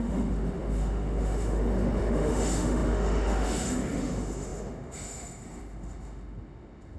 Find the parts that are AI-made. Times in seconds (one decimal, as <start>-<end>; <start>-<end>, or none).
0.0-7.0